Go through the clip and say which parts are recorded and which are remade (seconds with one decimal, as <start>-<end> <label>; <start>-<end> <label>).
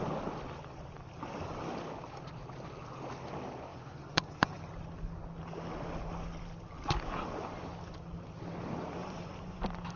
0.0-3.7 recorded; 3.7-4.6 remade; 4.6-9.0 recorded; 9.0-9.6 remade; 9.6-10.0 recorded